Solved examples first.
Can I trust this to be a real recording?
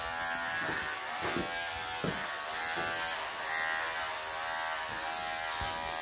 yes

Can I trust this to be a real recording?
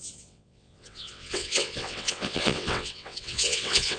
no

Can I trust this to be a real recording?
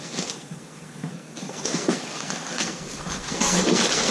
no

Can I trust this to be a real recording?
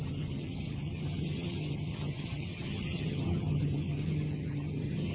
no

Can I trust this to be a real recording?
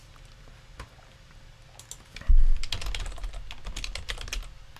yes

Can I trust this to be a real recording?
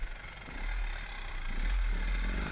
yes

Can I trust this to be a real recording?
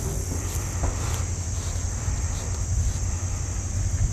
yes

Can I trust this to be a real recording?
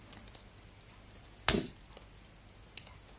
yes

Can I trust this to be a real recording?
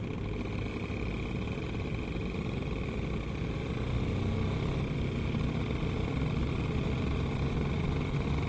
yes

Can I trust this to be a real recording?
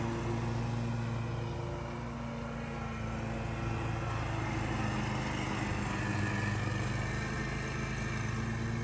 yes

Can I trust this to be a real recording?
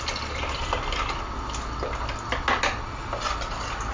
yes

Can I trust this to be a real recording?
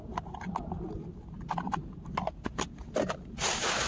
yes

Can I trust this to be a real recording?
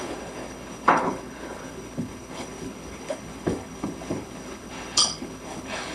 no